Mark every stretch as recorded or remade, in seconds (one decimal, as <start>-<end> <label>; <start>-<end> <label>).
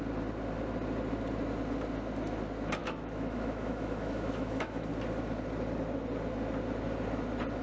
0.0-2.8 recorded; 2.8-4.9 remade; 4.9-7.6 recorded